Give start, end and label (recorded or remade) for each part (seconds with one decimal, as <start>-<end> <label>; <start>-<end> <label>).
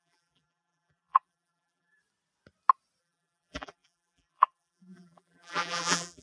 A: 0.0-2.0 remade; 2.0-3.0 recorded; 3.0-6.2 remade